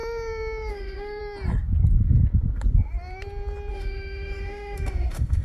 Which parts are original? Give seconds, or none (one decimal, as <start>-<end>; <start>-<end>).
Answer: 0.0-0.7; 1.2-3.7